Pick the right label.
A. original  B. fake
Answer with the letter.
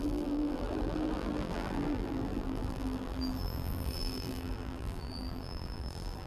B